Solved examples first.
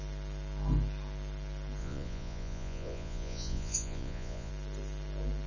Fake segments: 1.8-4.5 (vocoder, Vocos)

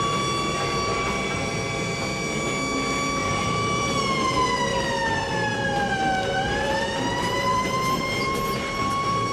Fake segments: 0.9-1.5 (vocoder, BigVGAN v2); 3.2-4.0; 4.7-8.3

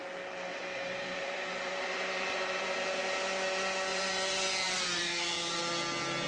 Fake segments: 0.5-3.0 (vocoder, BigVGAN v2); 3.9-5.6

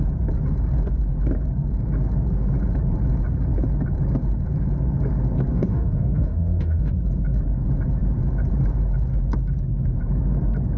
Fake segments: 5.5-6.9 (autoencoder, DAC-VAE)